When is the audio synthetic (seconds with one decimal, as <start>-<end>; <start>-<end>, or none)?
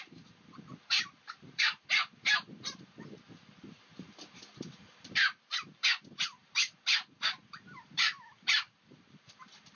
0.0-9.8